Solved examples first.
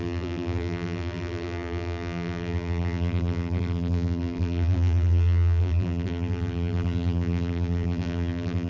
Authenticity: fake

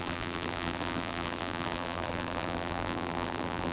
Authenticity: fake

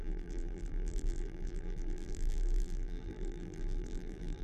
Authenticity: fake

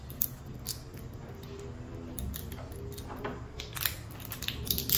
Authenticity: real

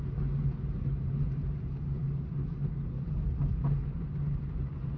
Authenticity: real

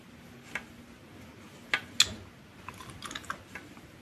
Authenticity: real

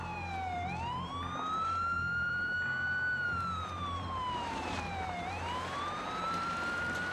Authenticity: fake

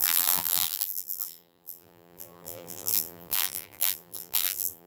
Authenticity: fake